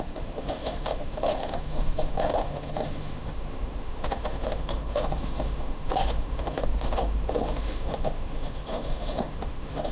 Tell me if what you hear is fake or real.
fake